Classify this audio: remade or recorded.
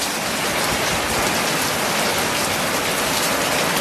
recorded